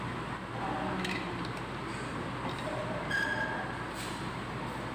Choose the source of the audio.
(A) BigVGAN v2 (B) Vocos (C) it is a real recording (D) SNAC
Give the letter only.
C